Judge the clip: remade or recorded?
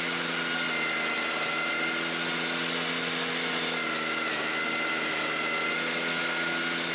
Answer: recorded